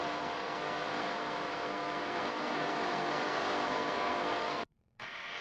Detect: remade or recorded remade